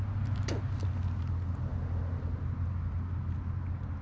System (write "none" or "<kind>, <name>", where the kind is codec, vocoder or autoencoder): none